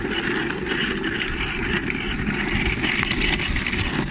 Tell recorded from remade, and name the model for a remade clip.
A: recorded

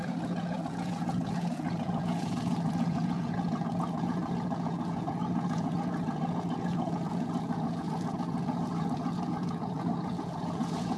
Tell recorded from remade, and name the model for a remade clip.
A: remade, vocoder, Vocos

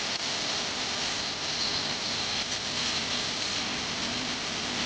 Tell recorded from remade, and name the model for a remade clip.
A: recorded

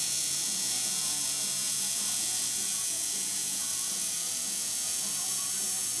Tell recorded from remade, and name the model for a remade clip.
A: remade, vocoder, Vocos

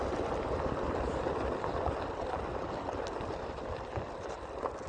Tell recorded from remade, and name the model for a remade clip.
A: recorded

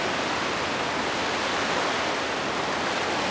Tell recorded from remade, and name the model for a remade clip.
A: recorded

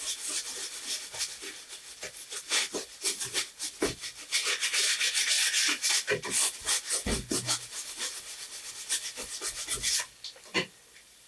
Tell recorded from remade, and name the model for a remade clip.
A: recorded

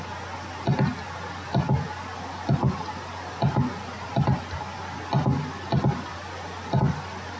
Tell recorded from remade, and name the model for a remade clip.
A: recorded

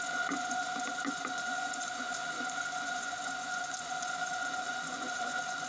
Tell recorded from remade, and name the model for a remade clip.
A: remade, vocoder, Vocos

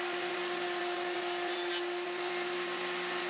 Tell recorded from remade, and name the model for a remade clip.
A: recorded